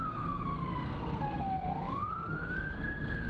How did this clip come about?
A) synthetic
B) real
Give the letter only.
A